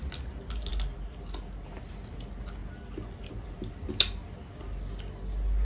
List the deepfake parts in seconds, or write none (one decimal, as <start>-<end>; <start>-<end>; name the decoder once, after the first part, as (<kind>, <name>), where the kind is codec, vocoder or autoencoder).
none